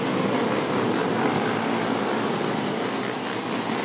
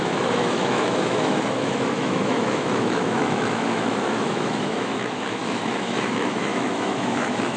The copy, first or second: second